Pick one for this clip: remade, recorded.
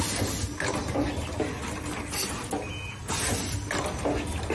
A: recorded